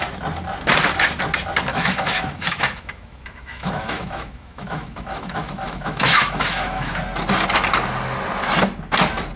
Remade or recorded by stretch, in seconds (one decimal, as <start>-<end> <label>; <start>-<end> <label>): 0.0-1.7 recorded; 1.7-6.9 remade; 6.9-9.4 recorded